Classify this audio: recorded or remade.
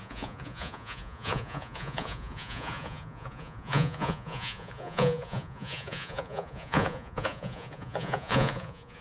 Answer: remade